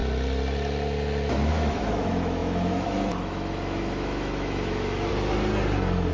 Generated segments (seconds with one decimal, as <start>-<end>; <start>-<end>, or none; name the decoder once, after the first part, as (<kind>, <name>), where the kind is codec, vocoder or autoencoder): 1.5-5.1 (autoencoder, DAC-VAE)